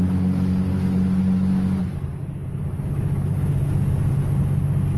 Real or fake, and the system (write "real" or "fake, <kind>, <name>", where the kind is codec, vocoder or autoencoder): real